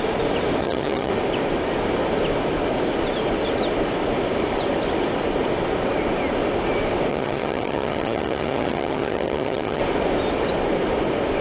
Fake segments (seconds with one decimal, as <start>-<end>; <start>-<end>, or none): 0.6-1.1; 7.1-9.8